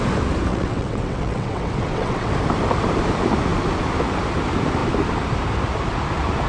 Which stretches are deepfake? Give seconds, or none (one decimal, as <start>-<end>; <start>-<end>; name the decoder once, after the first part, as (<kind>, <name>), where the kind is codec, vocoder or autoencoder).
0.5-2.3 (vocoder, WaveNeXt)